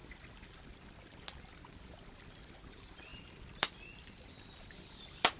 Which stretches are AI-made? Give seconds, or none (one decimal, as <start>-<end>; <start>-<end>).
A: none